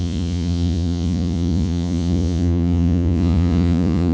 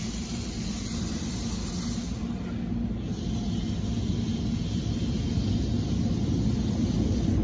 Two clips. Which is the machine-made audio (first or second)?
first